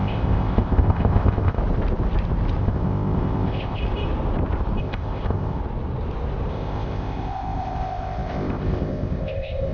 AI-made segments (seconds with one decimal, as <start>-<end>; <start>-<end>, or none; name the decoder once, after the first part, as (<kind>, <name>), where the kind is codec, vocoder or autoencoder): 0.0-1.6 (codec, ZipCodec); 2.6-3.8; 4.8-5.6; 6.5-9.7